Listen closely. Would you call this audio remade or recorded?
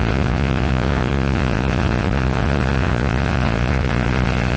remade